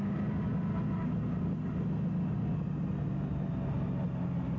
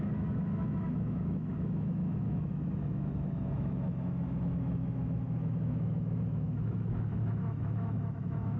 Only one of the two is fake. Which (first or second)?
second